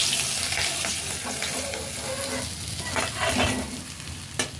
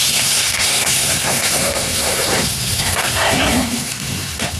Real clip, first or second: first